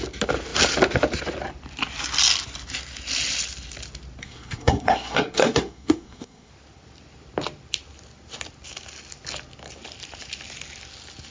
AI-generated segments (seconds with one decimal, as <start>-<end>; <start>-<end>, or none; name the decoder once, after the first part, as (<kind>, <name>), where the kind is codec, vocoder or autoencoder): 4.2-6.5 (codec, SNAC)